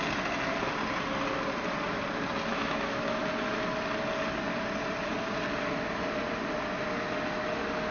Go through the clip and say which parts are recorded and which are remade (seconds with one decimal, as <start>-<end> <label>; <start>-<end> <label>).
0.0-2.5 recorded; 2.5-3.2 remade; 3.2-7.9 recorded